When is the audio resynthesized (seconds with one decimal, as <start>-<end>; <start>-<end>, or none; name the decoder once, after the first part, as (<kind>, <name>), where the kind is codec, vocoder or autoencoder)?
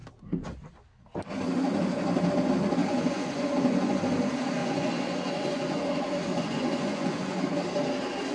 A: 2.8-4.0 (vocoder, Vocos); 4.6-7.4